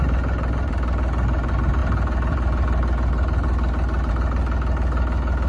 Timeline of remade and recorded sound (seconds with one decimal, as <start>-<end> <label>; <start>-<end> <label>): 0.0-5.5 recorded